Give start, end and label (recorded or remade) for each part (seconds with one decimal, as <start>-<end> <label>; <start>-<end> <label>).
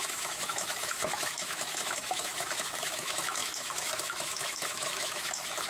0.0-5.7 remade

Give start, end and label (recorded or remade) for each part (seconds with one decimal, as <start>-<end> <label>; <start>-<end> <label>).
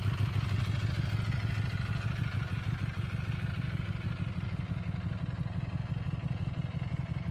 0.0-7.3 recorded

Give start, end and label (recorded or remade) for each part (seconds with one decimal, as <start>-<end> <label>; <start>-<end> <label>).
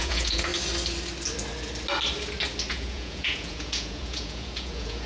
0.0-0.5 remade; 0.5-2.7 recorded; 2.7-5.1 remade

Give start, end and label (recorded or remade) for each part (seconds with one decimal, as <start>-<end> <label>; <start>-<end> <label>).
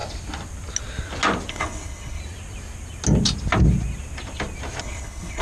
0.0-1.5 recorded; 1.5-2.2 remade; 2.2-4.8 recorded; 4.8-5.4 remade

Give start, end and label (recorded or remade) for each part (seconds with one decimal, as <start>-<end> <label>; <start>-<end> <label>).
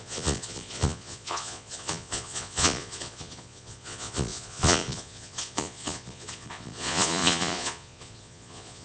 0.0-8.8 remade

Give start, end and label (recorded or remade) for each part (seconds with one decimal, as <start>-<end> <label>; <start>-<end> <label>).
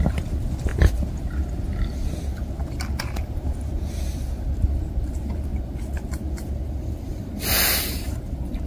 0.0-0.7 remade; 0.7-3.0 recorded; 3.0-5.5 remade; 5.5-6.8 recorded; 6.8-8.7 remade